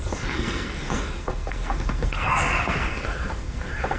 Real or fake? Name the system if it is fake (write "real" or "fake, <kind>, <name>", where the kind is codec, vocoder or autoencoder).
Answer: fake, codec, SNAC